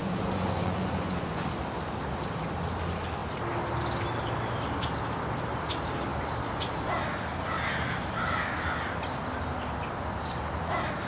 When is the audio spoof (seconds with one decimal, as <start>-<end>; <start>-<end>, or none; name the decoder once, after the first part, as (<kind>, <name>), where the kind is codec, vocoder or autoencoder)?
0.0-1.5 (vocoder, Vocos)